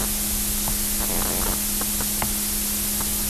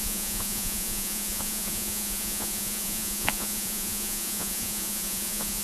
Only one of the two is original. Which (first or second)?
first